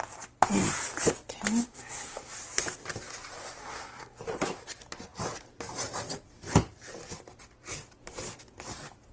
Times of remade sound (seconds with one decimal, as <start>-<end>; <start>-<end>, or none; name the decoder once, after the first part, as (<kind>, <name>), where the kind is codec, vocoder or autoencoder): 1.6-2.3 (codec, SNAC); 3.6-4.2